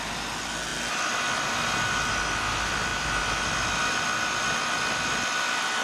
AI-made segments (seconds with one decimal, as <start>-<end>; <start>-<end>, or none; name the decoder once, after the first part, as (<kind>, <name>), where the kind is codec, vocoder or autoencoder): none